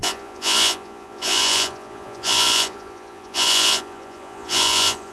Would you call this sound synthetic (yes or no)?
yes